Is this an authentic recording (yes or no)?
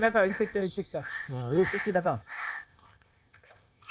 no